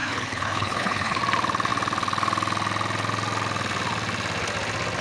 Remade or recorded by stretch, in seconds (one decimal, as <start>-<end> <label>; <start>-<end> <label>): 0.0-1.2 remade; 1.2-5.0 recorded

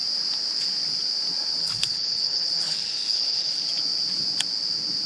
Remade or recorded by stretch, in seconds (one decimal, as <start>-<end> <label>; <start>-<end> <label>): 0.0-1.6 recorded; 1.6-3.6 remade; 3.6-5.1 recorded

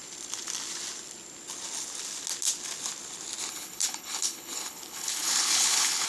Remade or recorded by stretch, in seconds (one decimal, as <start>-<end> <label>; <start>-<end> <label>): 0.0-3.5 recorded; 3.5-6.1 remade

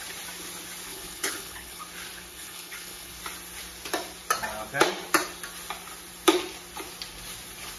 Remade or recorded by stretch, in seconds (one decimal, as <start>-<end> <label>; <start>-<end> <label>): 0.0-0.9 recorded; 0.9-1.8 remade; 1.8-2.3 recorded; 2.3-3.2 remade; 3.2-7.8 recorded

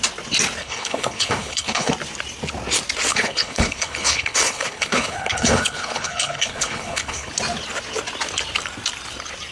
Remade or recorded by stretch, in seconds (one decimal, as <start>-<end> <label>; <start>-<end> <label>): 0.0-0.6 recorded; 0.6-1.9 remade; 1.9-3.1 recorded; 3.1-7.3 remade; 7.3-9.5 recorded

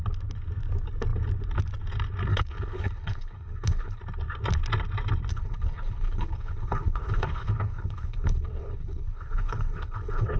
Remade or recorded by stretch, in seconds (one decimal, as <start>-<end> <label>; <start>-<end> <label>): 0.0-2.3 recorded; 2.3-4.0 remade; 4.0-5.3 recorded; 5.3-10.4 remade

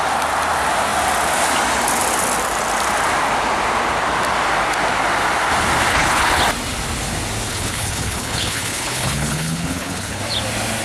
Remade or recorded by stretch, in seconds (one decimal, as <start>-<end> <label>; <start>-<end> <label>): 0.0-5.9 recorded; 5.9-6.4 remade; 6.4-7.5 recorded; 7.5-10.2 remade; 10.2-10.8 recorded

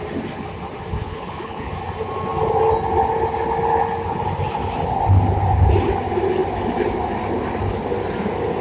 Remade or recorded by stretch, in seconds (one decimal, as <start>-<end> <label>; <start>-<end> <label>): 0.0-1.0 recorded; 1.0-1.7 remade; 1.7-8.6 recorded